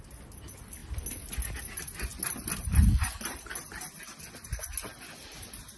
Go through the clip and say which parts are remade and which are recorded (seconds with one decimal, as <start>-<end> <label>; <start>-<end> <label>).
0.0-5.8 recorded